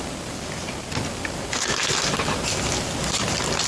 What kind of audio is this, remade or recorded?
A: recorded